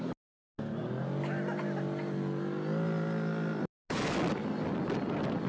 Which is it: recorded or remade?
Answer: recorded